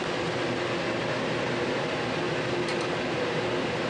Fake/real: real